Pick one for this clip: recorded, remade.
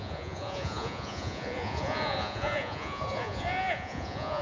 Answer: remade